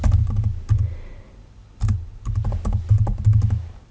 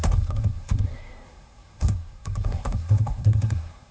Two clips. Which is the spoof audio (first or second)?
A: second